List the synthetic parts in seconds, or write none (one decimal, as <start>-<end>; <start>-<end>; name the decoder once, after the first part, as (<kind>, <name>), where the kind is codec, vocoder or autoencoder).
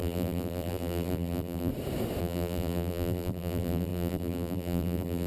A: 0.0-1.7 (vocoder, BigVGAN v2); 2.2-5.3